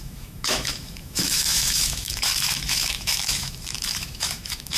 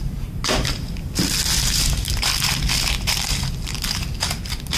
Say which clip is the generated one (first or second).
first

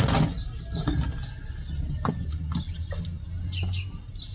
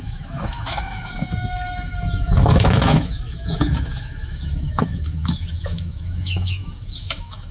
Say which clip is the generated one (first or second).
second